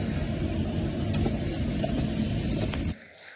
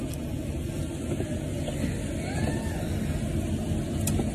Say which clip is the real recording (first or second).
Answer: second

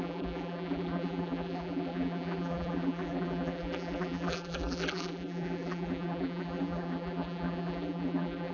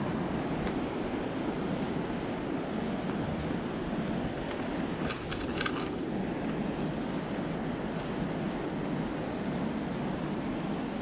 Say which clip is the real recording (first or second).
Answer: second